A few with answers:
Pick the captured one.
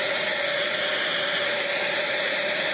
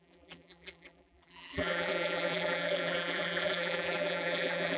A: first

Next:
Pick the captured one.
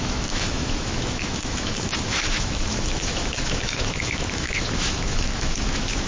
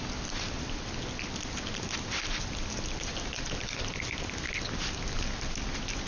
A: second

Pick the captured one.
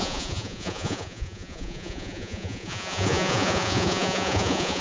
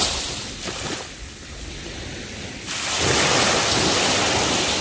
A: second